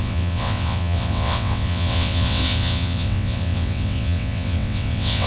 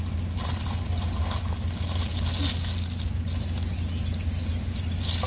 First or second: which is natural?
second